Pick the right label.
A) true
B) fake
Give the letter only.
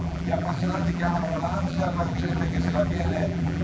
B